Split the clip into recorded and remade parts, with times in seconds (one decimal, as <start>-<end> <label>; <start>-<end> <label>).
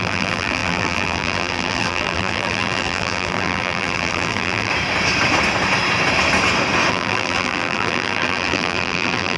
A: 0.0-4.7 remade; 4.7-6.9 recorded; 6.9-9.4 remade